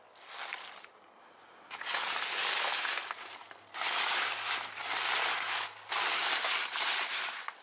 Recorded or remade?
recorded